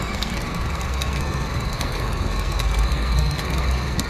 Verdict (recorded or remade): remade